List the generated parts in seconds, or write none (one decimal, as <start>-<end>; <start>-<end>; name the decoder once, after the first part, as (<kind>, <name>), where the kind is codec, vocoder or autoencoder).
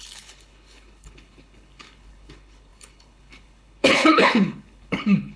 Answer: 0.0-5.4 (codec, HILCodec)